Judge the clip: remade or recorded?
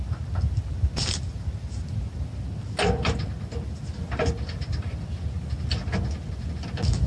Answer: recorded